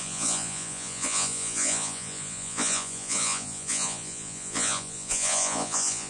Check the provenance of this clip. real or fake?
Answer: fake